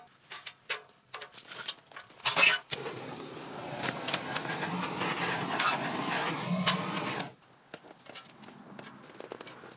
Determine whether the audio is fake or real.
real